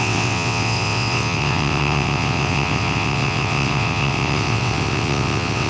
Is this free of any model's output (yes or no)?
no